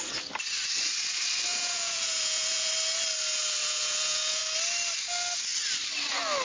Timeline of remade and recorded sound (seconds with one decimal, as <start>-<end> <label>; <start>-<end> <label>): 0.0-1.5 recorded; 1.5-2.7 remade; 2.7-3.6 recorded; 3.6-4.4 remade; 4.4-6.4 recorded